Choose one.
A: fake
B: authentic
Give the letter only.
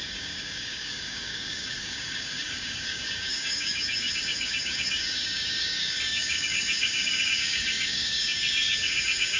A